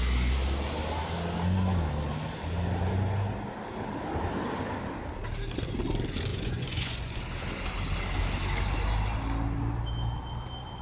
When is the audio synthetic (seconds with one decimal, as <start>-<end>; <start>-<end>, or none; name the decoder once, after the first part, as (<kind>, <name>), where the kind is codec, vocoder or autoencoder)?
6.3-7.2 (vocoder, Vocos)